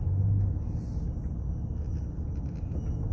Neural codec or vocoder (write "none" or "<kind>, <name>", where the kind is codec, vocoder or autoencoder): none